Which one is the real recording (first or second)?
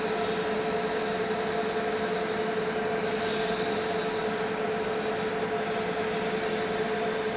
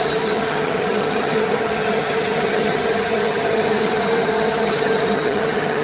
first